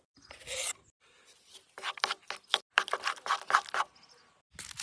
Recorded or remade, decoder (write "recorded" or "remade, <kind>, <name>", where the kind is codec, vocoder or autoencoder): recorded